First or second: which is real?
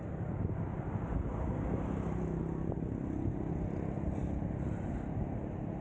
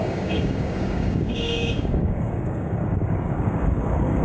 first